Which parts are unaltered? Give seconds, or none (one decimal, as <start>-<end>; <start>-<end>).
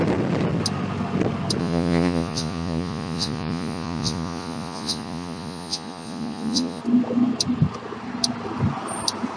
0.0-1.6; 6.8-9.4